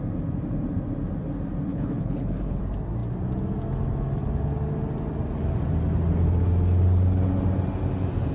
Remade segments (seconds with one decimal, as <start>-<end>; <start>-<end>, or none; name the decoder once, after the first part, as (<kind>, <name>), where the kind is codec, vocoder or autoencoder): 1.7-2.6 (codec, HILCodec)